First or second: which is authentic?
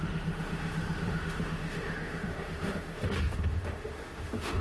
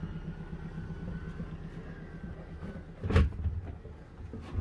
second